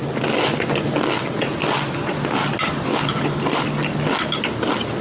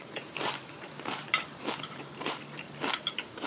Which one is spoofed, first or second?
second